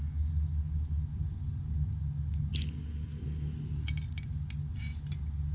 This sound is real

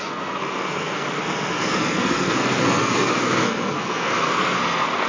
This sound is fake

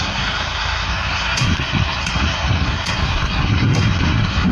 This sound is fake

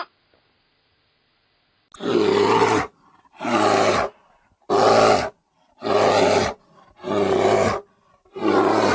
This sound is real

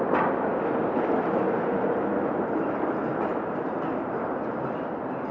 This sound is real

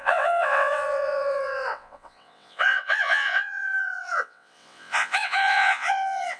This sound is fake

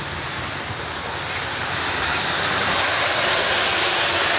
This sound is fake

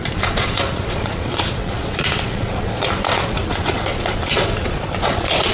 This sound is fake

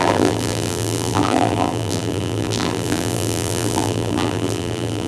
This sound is fake